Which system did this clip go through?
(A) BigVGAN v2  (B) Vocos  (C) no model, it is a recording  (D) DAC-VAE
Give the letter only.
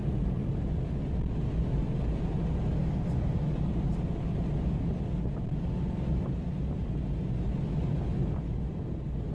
C